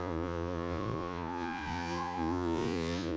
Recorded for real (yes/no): no